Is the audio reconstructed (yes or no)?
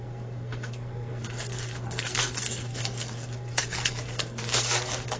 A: yes